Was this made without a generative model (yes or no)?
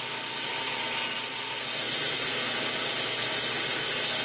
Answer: yes